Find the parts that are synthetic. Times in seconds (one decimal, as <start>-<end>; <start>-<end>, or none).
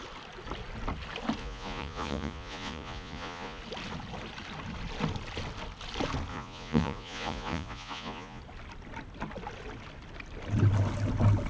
1.4-3.6; 6.3-8.4